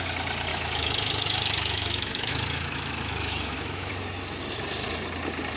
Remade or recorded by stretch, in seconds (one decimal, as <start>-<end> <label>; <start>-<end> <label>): 0.0-0.5 recorded; 0.5-3.9 remade; 3.9-5.6 recorded